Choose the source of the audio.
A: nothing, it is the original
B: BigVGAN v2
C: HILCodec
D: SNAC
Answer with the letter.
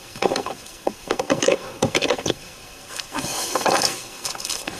D